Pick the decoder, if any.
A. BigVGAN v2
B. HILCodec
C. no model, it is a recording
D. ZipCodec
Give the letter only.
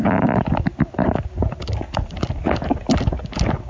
C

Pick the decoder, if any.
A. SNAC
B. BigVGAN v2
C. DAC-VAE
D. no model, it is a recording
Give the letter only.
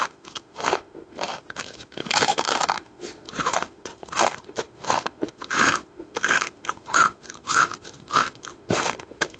C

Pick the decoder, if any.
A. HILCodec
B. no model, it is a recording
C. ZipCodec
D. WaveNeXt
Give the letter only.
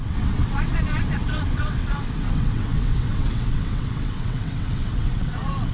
D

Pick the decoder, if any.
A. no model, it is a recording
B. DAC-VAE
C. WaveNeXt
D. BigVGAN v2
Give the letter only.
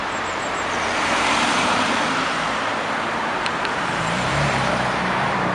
D